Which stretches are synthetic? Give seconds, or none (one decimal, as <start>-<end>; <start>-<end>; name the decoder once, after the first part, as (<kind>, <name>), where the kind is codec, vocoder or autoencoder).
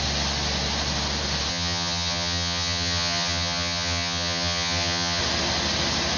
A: 1.5-5.2 (vocoder, HiFi-GAN)